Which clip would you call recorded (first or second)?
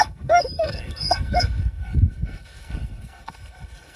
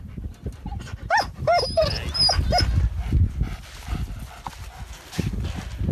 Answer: second